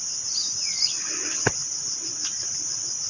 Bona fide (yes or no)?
yes